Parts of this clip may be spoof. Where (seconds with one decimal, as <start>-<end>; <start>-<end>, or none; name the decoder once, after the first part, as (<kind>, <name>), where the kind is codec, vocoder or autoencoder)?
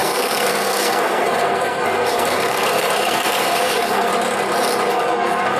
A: 0.0-4.1 (codec, SNAC); 4.9-5.6